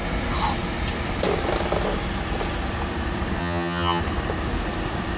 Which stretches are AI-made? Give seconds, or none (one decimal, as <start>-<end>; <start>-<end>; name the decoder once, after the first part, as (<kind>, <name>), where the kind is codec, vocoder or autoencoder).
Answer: 3.4-4.0 (vocoder, HiFi-GAN)